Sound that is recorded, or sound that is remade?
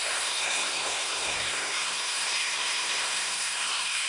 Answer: remade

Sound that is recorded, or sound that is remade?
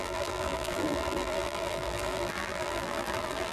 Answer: remade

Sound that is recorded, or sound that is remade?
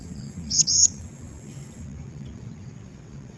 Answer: remade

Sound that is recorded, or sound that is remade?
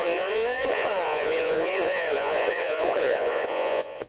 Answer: remade